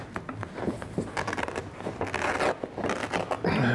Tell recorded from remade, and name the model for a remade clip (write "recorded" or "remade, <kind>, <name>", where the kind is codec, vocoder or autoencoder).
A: recorded